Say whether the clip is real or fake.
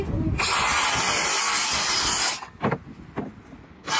real